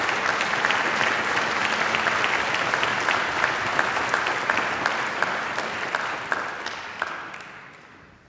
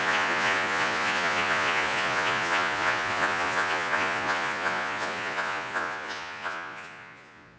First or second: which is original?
first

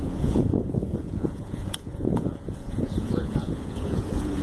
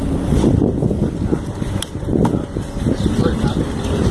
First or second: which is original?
second